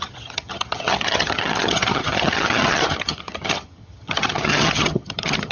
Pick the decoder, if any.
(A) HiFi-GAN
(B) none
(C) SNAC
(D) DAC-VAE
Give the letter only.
A